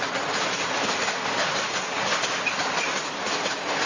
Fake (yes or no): no